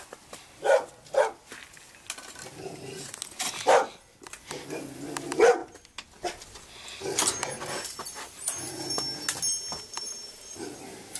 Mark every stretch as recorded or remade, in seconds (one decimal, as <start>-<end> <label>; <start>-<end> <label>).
0.0-11.2 recorded